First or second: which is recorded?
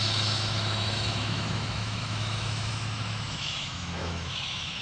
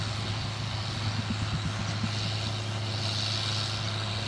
second